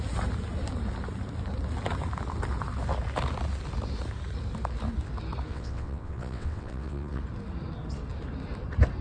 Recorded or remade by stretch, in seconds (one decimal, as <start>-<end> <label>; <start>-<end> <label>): 0.0-5.5 recorded; 5.5-7.2 remade; 7.2-9.0 recorded